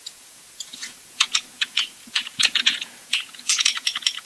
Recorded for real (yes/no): no